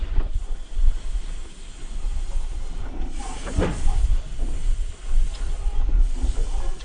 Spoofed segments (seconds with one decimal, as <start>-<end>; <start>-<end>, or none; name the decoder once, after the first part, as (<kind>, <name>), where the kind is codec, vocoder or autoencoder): 0.0-0.8 (vocoder, BigVGAN v2); 3.2-4.1